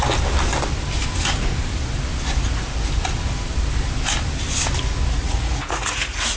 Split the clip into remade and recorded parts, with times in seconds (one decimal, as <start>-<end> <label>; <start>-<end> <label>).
0.0-5.2 recorded; 5.2-6.4 remade